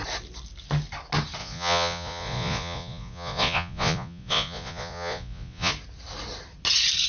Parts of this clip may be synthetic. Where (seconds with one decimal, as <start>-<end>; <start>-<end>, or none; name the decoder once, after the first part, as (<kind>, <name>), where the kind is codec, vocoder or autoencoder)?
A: 1.4-5.7 (vocoder, Vocos)